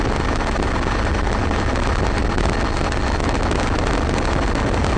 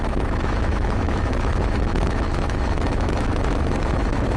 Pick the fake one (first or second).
second